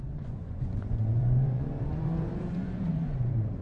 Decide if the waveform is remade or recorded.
remade